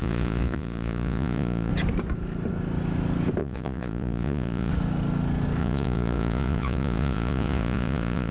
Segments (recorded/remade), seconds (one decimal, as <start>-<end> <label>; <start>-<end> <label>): 0.0-1.7 remade; 1.7-3.4 recorded; 3.4-4.7 remade; 4.7-5.6 recorded; 5.6-8.3 remade